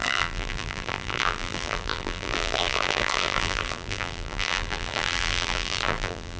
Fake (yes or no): yes